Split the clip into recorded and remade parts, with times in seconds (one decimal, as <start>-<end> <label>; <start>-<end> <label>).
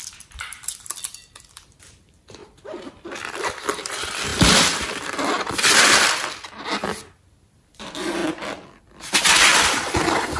0.0-2.4 remade; 2.4-3.5 recorded; 3.5-8.2 remade; 8.2-9.0 recorded; 9.0-10.4 remade